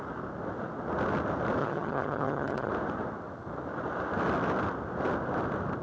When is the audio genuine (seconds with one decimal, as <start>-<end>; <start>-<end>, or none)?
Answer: 0.0-1.6; 2.7-5.8

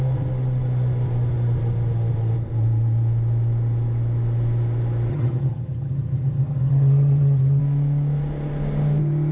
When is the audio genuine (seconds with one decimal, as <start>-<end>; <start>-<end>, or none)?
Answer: 0.0-5.1; 7.6-9.3